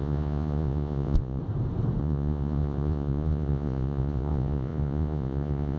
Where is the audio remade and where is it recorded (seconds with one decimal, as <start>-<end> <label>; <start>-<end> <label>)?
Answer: 0.0-1.4 remade; 1.4-2.0 recorded; 2.0-5.8 remade